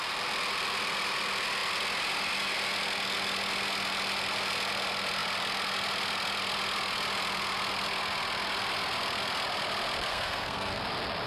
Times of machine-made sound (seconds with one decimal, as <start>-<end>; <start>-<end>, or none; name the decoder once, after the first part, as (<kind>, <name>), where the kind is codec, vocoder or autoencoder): 10.1-10.8 (codec, SNAC)